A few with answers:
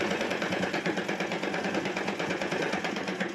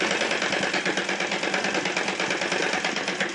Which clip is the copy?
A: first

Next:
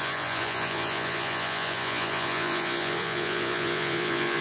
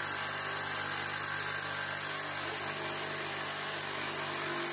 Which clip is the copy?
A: first